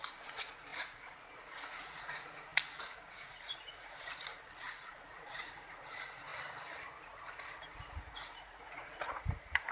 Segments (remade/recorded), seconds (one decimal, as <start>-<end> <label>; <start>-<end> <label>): 0.0-6.3 remade; 6.3-7.0 recorded; 7.0-9.7 remade